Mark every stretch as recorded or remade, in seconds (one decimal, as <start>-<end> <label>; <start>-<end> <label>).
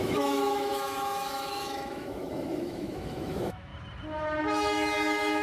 0.0-3.7 remade; 3.7-4.4 recorded; 4.4-5.4 remade